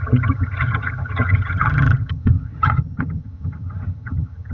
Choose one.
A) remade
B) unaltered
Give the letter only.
A